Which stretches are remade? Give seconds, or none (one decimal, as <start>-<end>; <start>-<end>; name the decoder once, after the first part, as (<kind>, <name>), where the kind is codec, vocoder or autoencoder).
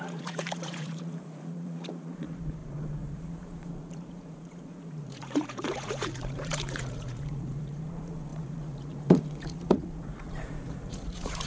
0.0-11.5 (vocoder, Vocos)